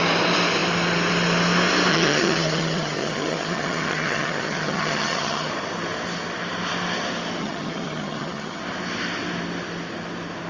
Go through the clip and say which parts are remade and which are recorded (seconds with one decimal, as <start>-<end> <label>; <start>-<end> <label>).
0.0-1.9 recorded; 1.9-5.5 remade; 5.5-7.4 recorded; 7.4-8.6 remade; 8.6-10.5 recorded